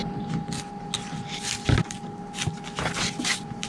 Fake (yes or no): no